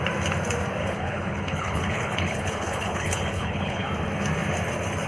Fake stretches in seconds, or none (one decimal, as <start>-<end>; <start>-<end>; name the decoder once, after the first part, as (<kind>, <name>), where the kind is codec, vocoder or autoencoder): 0.8-3.9 (codec, HILCodec)